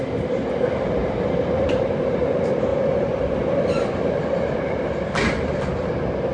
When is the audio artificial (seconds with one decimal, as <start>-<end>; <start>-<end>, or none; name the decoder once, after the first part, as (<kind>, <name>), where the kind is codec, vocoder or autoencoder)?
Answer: 1.0-1.9 (vocoder, BigVGAN v2); 2.7-4.5